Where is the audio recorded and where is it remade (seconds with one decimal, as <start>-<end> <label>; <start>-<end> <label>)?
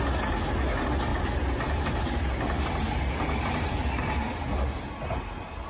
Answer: 0.0-5.7 recorded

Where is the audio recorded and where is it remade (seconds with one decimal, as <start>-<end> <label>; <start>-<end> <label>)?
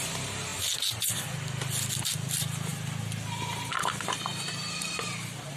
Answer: 0.0-5.6 recorded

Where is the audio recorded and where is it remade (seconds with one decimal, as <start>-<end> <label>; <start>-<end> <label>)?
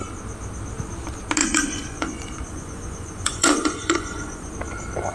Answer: 0.0-1.4 recorded; 1.4-4.5 remade; 4.5-5.1 recorded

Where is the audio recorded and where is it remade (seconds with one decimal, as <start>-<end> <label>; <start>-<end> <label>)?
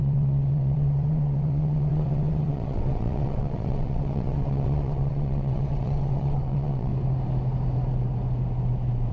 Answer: 0.0-6.9 remade; 6.9-9.1 recorded